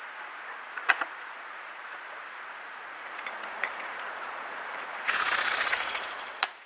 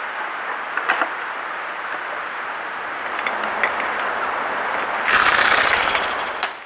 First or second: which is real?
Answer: second